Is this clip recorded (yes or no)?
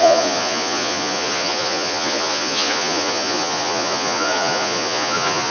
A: no